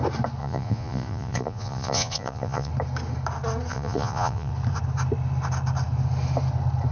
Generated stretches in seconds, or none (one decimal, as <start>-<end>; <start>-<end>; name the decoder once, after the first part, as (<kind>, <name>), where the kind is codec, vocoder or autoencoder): 0.4-2.7 (vocoder, Vocos); 3.7-4.5